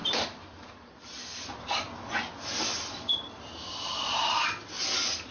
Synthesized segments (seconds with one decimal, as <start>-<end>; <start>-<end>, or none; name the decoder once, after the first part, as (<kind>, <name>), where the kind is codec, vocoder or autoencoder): 0.0-0.9 (vocoder, BigVGAN v2)